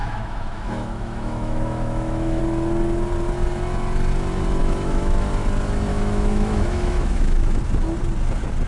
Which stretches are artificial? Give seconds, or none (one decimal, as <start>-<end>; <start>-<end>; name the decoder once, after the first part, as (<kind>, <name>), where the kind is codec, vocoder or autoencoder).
0.0-2.4 (autoencoder, DAC-VAE); 4.6-5.3; 5.9-7.6